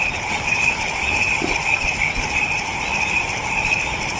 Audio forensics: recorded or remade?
recorded